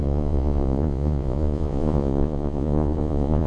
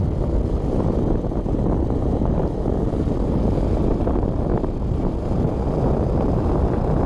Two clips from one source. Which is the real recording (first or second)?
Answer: second